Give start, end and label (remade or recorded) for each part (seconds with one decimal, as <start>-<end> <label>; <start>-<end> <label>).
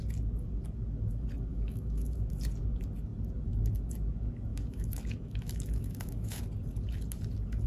0.0-1.5 recorded; 1.5-2.3 remade; 2.3-4.5 recorded; 4.5-6.4 remade; 6.4-7.7 recorded